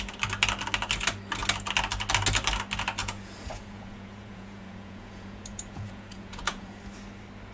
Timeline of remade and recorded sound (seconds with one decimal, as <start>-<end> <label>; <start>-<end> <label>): 0.0-3.0 recorded; 3.0-6.8 remade; 6.8-7.5 recorded